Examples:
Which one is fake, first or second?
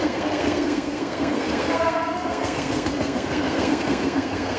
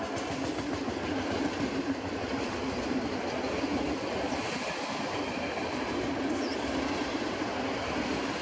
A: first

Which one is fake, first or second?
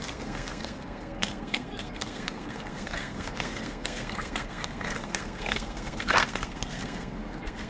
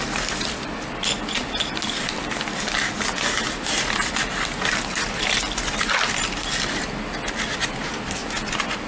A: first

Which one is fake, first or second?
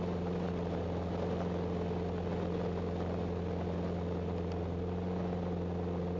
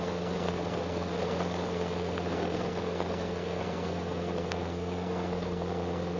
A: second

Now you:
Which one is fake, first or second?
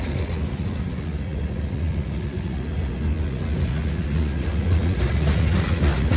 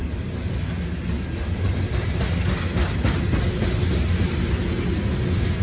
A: first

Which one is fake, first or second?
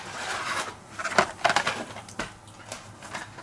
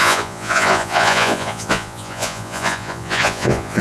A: second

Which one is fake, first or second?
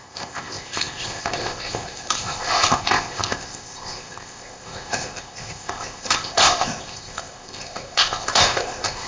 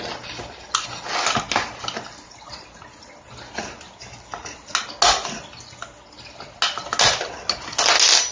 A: first